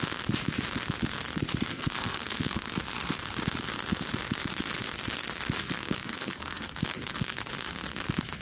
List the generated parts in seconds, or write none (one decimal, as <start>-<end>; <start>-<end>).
1.7-2.7; 5.6-7.4